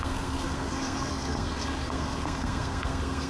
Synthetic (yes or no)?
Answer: yes